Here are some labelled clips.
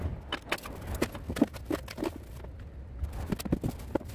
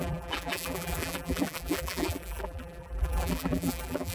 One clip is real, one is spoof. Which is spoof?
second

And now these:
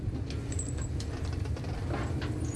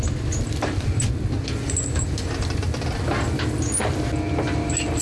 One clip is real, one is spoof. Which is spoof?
first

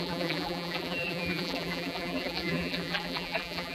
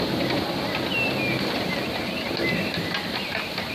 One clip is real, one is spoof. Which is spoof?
first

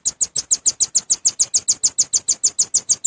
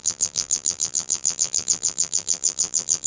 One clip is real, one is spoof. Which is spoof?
second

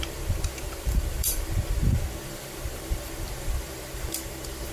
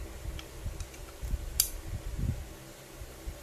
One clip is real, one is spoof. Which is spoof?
first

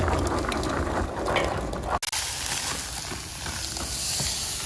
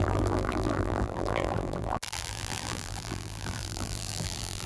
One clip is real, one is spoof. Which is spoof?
second